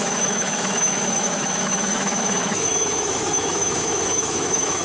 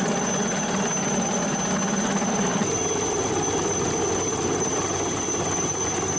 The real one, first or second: second